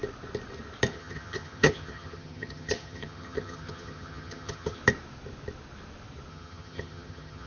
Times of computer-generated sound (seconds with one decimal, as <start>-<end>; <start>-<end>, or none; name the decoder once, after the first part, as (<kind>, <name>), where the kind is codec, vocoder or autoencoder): 0.9-4.8 (vocoder, HiFi-GAN); 6.3-7.5